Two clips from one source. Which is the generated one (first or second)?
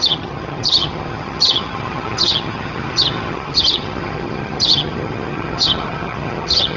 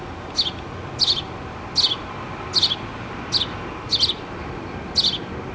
first